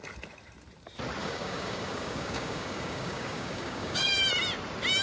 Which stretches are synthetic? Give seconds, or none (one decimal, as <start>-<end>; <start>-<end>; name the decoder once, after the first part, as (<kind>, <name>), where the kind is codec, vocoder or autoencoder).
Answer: 1.2-4.2 (codec, DAC)